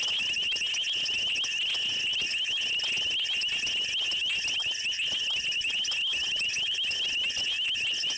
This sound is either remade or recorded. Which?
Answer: recorded